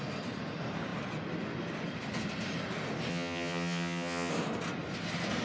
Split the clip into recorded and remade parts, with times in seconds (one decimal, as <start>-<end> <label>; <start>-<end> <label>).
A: 0.0-3.1 recorded; 3.1-4.3 remade; 4.3-5.4 recorded